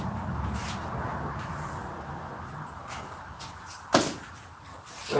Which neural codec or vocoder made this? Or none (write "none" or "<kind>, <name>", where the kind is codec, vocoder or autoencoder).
none